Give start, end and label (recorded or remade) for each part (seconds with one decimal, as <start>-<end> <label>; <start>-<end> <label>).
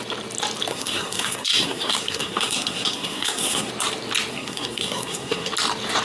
0.0-0.7 recorded; 0.7-3.7 remade; 3.7-4.3 recorded; 4.3-5.5 remade; 5.5-6.0 recorded